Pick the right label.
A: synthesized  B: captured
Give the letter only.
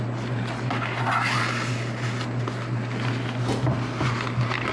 B